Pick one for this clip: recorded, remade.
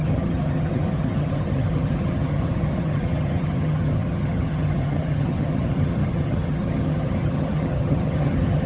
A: remade